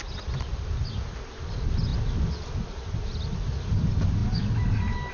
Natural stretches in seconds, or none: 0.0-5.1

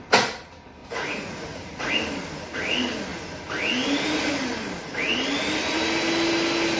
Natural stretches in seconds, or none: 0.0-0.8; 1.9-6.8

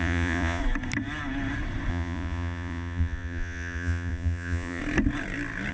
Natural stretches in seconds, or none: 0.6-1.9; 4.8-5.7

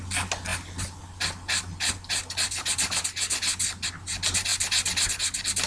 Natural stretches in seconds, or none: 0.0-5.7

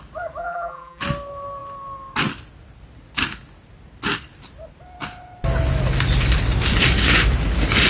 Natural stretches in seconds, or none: 0.0-0.4; 1.0-7.9